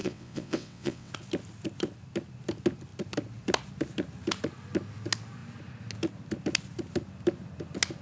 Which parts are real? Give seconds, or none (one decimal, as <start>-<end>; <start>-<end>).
1.1-8.0